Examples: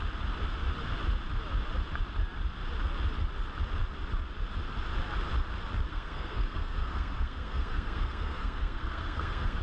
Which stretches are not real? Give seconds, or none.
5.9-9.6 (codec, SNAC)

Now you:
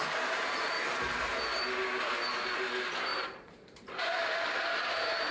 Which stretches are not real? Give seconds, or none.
3.1-4.1 (vocoder, BigVGAN v2)

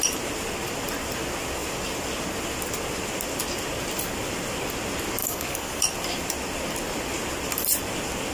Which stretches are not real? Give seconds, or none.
5.2-5.8 (codec, DAC)

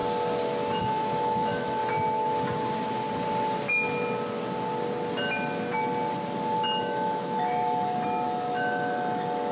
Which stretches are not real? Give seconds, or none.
0.8-1.8 (autoencoder, DAC-VAE); 6.8-9.5

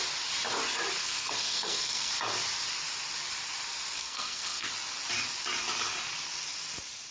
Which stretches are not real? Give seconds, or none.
1.0-2.1 (codec, SNAC); 4.0-4.7

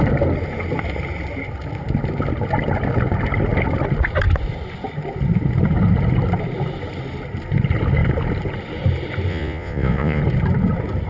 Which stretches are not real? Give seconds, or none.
9.3-10.2 (vocoder, Vocos)

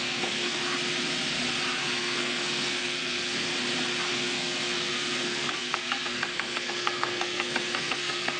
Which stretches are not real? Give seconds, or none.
0.0-0.6 (codec, SNAC); 1.8-3.5; 4.1-8.4

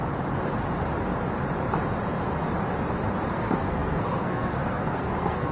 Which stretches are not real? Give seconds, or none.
3.3-5.5 (codec, SNAC)